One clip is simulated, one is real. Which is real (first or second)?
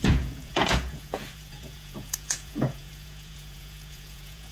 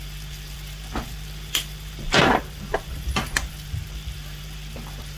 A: second